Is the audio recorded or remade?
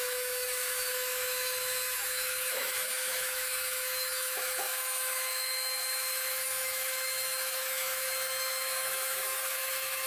remade